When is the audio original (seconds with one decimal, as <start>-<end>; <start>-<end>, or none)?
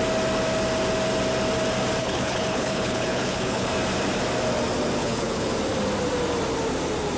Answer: 0.0-2.0; 3.7-5.0; 5.5-7.2